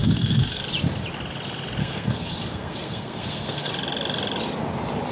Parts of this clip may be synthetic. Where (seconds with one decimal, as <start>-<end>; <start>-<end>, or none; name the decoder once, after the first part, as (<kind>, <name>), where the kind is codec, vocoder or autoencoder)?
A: 0.0-0.6 (codec, SNAC); 1.8-3.7